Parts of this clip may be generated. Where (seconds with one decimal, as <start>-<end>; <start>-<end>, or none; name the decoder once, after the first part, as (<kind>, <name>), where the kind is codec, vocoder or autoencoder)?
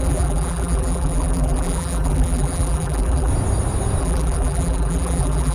0.0-3.3 (vocoder, BigVGAN v2); 4.0-5.5